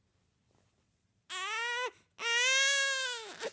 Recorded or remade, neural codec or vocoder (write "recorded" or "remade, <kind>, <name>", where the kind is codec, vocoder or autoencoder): recorded